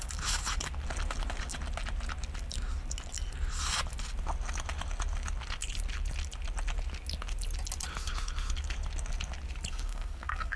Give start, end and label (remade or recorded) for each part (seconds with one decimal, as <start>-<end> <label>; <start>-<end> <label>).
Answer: 0.0-9.7 recorded; 9.7-10.6 remade